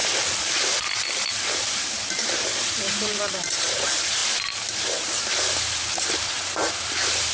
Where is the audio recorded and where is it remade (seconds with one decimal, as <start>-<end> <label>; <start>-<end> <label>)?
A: 0.0-0.8 recorded; 0.8-2.3 remade; 2.3-3.3 recorded; 3.3-4.2 remade; 4.2-4.7 recorded; 4.7-7.3 remade